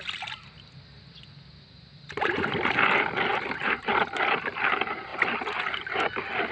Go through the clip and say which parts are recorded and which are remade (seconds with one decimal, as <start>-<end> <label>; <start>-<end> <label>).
0.0-6.5 recorded